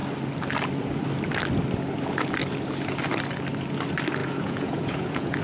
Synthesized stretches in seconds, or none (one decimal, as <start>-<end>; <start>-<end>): 4.2-5.4